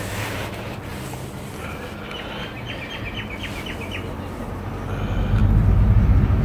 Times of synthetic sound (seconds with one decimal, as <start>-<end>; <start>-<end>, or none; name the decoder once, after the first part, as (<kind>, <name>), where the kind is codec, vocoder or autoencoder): 0.9-4.7 (vocoder, BigVGAN v2)